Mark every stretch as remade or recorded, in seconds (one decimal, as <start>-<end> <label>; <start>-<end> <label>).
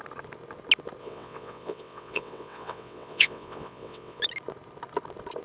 0.0-1.0 recorded; 1.0-4.2 remade; 4.2-5.4 recorded